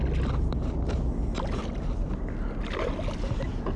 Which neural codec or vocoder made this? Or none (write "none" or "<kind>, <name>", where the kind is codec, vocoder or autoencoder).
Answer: none